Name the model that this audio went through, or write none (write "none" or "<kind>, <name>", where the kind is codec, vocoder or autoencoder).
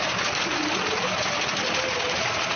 none